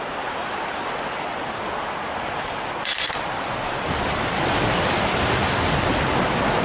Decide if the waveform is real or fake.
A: real